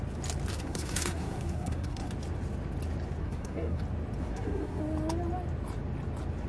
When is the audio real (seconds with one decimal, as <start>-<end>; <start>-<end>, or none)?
0.0-0.5; 2.1-3.2; 3.8-4.2; 4.8-6.5